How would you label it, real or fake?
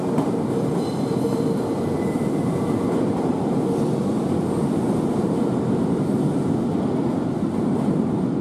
real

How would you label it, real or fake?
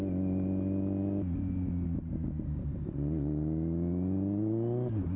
real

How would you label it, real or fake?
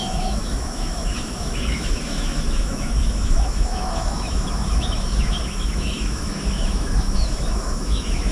fake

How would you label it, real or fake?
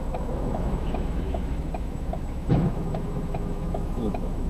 fake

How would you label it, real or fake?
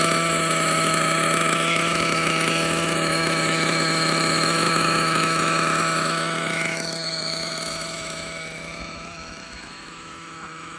fake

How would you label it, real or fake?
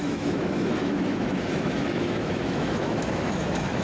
fake